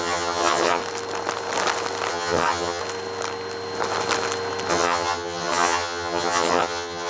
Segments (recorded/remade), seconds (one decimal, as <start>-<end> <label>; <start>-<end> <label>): 0.0-0.8 remade; 0.8-2.1 recorded; 2.1-2.8 remade; 2.8-4.7 recorded; 4.7-7.1 remade